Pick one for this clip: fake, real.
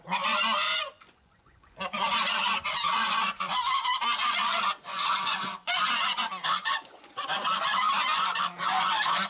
fake